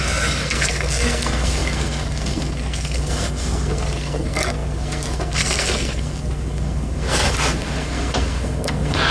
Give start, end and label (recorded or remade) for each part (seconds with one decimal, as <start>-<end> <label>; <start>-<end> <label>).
0.0-9.1 remade